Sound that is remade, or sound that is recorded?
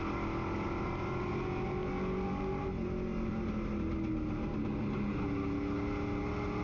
recorded